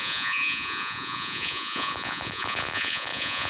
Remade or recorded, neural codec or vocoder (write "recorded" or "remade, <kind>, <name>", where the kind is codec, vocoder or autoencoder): remade, vocoder, Vocos